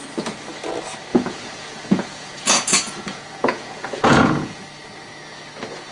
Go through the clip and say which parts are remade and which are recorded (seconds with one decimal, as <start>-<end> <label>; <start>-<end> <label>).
0.0-1.1 recorded; 1.1-4.6 remade; 4.6-5.9 recorded